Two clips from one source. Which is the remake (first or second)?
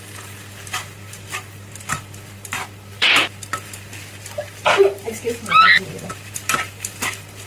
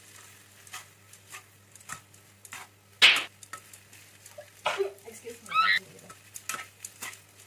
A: first